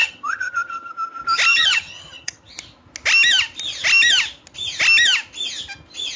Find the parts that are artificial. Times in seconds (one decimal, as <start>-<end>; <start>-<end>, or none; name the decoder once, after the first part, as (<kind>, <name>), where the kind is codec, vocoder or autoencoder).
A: 0.0-0.9 (vocoder, HiFi-GAN); 1.5-2.5